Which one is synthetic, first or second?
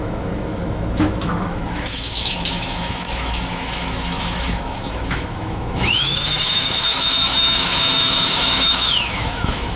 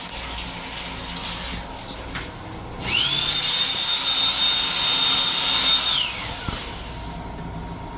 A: first